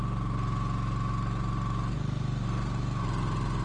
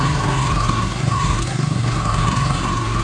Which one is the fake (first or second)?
second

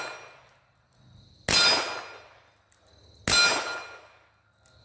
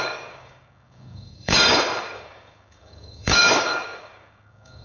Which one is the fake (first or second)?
second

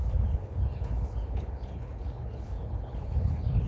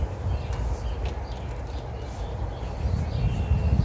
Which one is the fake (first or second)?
first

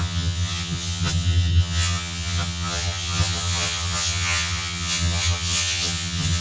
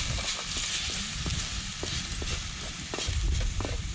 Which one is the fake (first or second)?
first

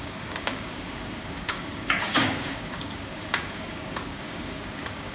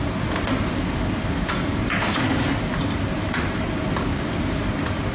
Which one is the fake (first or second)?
first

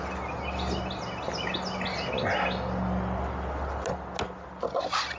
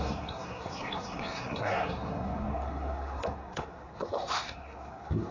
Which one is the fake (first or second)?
second